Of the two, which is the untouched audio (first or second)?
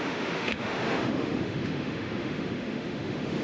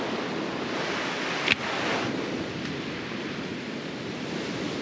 second